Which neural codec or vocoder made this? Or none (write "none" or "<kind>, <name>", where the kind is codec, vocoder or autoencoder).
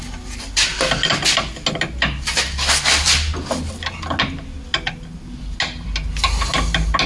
none